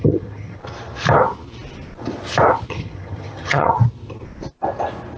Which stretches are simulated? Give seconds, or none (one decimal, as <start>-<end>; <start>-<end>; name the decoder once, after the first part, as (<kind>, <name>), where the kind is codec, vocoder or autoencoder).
0.0-0.6 (vocoder, HiFi-GAN); 2.7-3.8